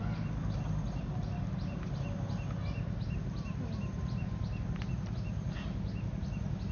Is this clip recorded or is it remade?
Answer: recorded